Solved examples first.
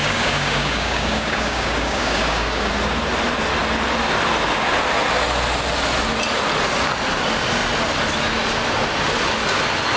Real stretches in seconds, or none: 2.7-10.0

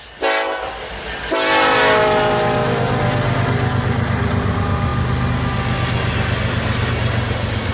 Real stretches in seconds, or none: 0.0-7.7

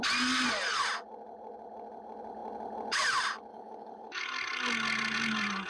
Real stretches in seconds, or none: 0.0-3.5; 4.2-5.7

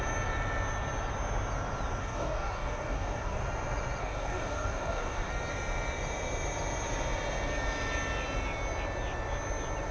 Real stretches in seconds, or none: 0.0-2.0; 3.4-4.0; 5.3-9.9

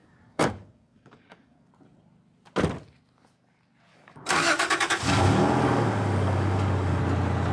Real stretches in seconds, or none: 1.7-3.9; 7.0-7.5

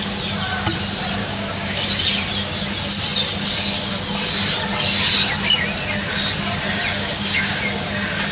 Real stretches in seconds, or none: 0.0-1.2; 1.9-6.9; 7.6-8.3

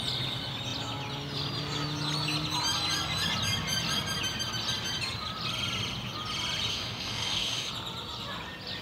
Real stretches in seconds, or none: 0.0-6.7; 7.7-8.8